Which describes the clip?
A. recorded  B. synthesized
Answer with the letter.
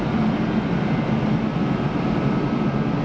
A